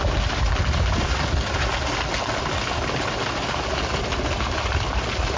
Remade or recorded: recorded